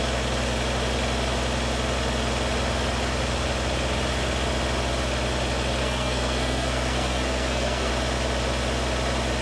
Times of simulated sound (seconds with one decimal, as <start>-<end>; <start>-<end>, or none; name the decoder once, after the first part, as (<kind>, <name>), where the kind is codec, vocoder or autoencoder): 5.8-7.9 (codec, SNAC)